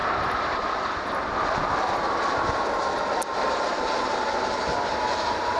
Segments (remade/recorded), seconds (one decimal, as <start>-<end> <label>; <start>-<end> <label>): 0.0-5.6 recorded